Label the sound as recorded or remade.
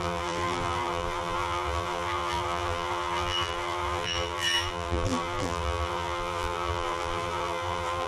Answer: remade